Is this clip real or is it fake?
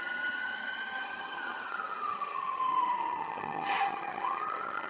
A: fake